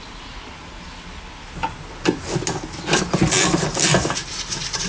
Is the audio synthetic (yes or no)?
no